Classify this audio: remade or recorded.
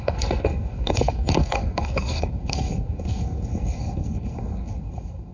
remade